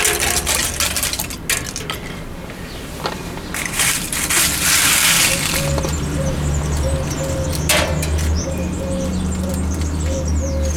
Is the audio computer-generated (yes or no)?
no